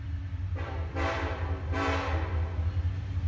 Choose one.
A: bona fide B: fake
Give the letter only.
B